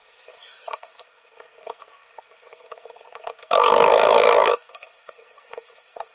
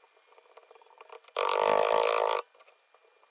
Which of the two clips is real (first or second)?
second